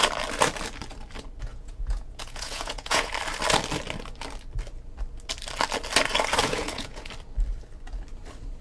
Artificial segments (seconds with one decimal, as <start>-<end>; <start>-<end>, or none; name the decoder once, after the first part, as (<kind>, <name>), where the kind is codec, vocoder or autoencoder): 1.5-3.1 (vocoder, Vocos); 6.4-7.1